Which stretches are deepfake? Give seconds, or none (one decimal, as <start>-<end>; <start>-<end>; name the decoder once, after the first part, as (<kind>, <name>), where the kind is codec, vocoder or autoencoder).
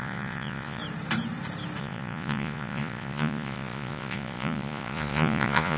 0.0-0.8 (vocoder, Vocos); 1.8-5.8